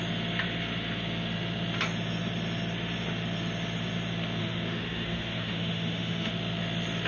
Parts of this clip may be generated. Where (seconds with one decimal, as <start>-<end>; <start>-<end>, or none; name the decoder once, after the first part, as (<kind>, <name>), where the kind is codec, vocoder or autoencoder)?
4.4-6.3 (autoencoder, DAC-VAE)

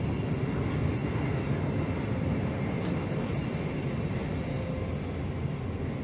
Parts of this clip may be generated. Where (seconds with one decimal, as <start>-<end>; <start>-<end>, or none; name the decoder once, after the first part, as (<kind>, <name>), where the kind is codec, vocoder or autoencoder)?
none